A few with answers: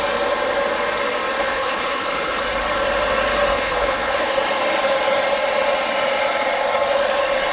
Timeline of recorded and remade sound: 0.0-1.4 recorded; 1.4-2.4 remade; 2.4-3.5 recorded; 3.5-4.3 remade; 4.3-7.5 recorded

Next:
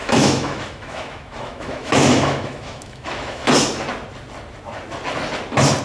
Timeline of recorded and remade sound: 0.0-3.5 remade; 3.5-5.8 recorded

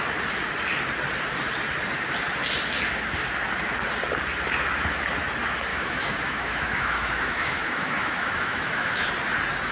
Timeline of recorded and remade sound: 0.0-5.7 recorded; 5.7-9.1 remade; 9.1-9.7 recorded

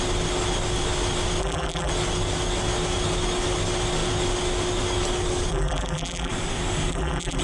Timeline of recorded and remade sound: 0.0-1.4 recorded; 1.4-1.9 remade; 1.9-5.5 recorded; 5.5-6.3 remade; 6.3-6.9 recorded; 6.9-7.4 remade